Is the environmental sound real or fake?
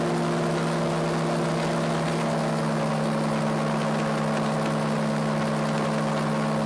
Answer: real